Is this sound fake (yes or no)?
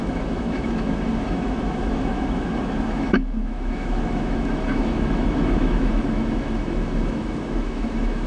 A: yes